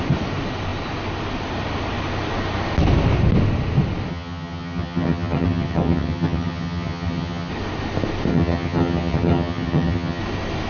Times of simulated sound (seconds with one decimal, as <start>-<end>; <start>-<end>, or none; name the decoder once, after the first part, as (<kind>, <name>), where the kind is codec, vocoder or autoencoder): 4.1-7.5 (vocoder, HiFi-GAN); 8.3-10.2